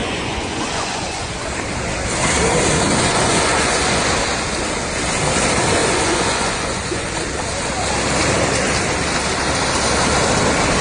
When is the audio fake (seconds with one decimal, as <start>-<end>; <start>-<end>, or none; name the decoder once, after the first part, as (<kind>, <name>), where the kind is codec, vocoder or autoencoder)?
0.0-1.4 (vocoder, Vocos); 2.9-4.1; 5.8-7.1